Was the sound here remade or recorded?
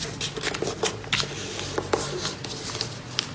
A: recorded